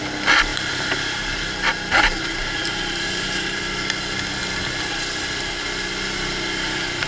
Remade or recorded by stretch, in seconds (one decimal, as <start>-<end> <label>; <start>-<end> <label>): 0.0-0.5 recorded; 0.5-3.6 remade; 3.6-7.1 recorded